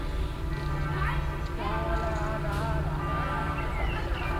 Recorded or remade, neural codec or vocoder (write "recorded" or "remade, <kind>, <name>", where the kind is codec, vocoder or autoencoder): recorded